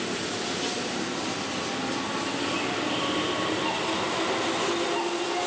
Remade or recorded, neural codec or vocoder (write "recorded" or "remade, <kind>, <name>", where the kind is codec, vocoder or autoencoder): recorded